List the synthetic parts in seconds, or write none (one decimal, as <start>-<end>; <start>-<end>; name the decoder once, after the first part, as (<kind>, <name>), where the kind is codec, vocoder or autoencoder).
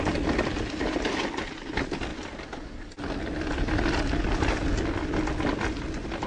none